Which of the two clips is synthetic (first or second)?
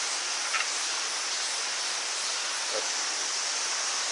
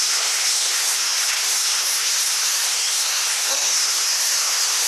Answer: second